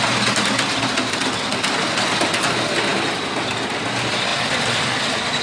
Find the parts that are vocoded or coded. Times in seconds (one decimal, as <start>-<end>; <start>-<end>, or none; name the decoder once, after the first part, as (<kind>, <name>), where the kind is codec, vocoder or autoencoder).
none